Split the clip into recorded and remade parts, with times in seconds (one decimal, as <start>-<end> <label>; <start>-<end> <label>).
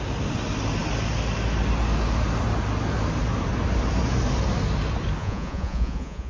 0.0-5.2 recorded; 5.2-6.3 remade